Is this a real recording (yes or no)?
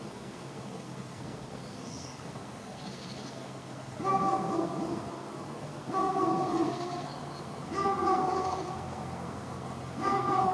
no